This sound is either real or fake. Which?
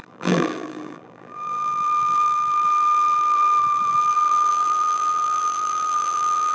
fake